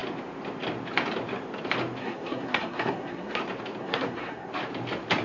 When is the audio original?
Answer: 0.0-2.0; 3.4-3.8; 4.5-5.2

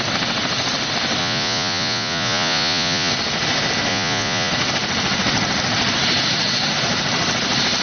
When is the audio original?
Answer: 0.0-1.2; 3.1-3.9; 4.5-7.8